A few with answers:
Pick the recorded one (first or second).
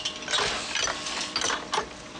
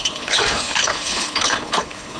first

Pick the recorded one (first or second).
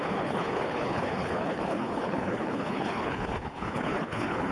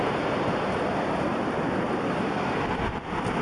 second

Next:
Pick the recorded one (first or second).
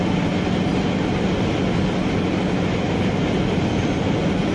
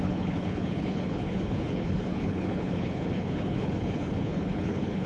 first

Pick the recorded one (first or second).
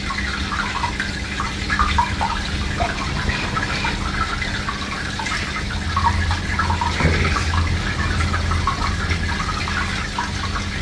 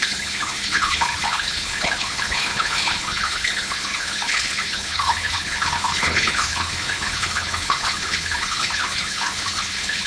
first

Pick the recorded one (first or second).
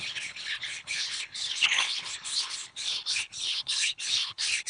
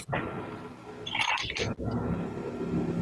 second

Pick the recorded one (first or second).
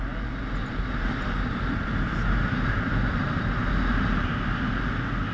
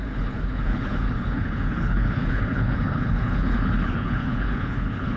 first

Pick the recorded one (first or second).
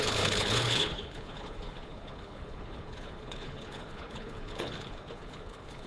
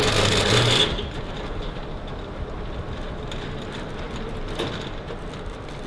second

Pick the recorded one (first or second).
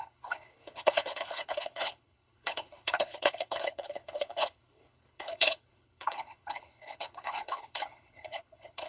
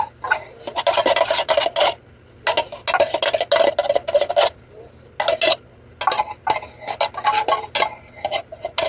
second